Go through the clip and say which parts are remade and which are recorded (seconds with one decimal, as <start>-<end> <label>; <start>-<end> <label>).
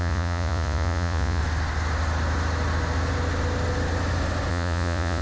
0.0-1.4 remade; 1.4-4.5 recorded; 4.5-5.2 remade